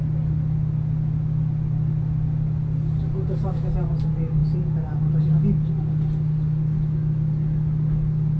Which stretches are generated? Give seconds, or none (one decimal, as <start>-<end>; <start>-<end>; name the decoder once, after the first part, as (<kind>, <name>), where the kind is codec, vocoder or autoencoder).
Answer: none